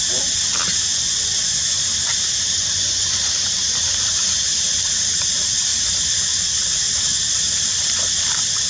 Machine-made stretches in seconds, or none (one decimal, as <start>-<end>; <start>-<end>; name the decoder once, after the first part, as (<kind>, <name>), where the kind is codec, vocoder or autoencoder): 0.9-1.8 (vocoder, Vocos); 2.6-3.3